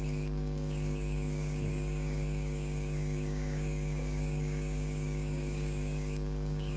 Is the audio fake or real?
fake